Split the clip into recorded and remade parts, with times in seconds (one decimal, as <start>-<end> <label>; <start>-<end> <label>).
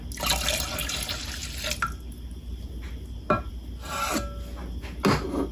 0.0-5.5 recorded